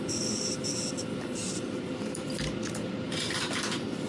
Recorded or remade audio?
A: recorded